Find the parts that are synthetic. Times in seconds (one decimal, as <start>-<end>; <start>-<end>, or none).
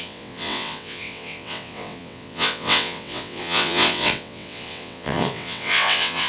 0.0-6.3